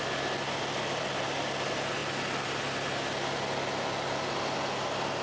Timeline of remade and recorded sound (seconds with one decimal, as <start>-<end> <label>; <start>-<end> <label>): 0.0-5.2 recorded